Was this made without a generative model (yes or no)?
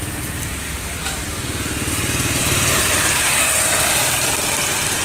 yes